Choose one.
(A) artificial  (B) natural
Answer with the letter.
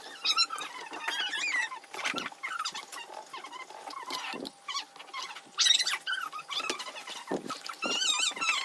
B